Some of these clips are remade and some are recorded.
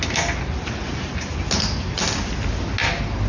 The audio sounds recorded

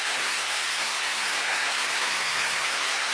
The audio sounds remade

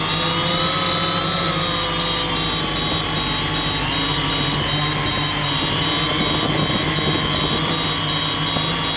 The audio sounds recorded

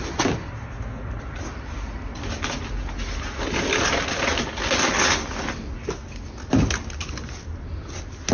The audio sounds recorded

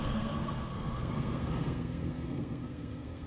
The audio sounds remade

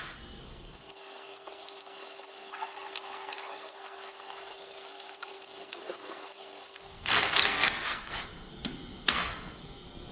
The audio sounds remade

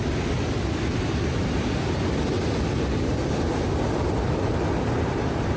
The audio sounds recorded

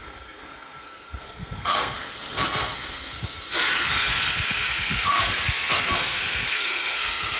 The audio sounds remade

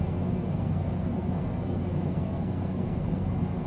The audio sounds remade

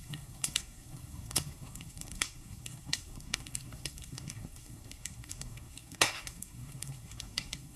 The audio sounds remade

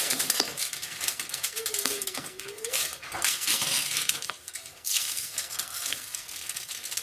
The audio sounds remade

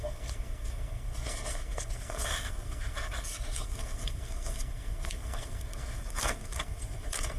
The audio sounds remade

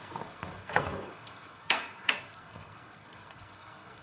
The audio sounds remade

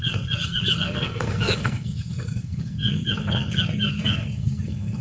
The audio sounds remade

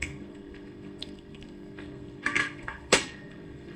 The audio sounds remade